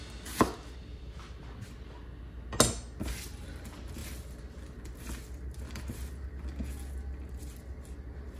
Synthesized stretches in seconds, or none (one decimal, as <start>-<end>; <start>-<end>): none